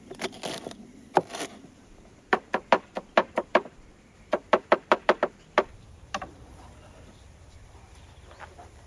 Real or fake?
fake